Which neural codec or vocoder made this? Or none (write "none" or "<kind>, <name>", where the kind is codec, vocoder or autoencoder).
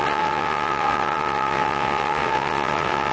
vocoder, WaveNeXt